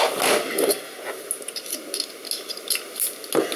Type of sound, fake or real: real